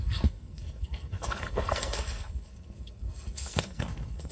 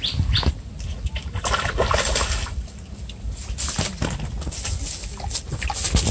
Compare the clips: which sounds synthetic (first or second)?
first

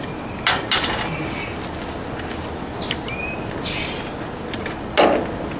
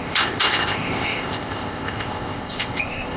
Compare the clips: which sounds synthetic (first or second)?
second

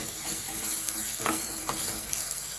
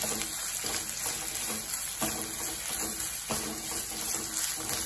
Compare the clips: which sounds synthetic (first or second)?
first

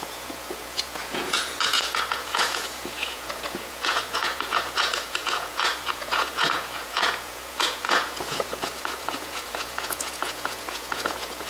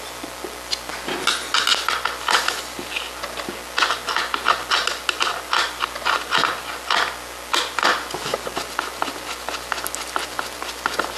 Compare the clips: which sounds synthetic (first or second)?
first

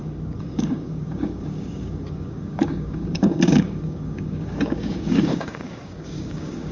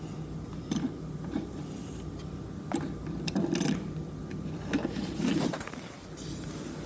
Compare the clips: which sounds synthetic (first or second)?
first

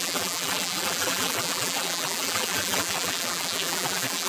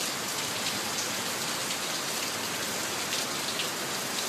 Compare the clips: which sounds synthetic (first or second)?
first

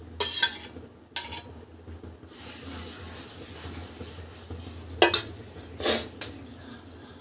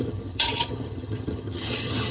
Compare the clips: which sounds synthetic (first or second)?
second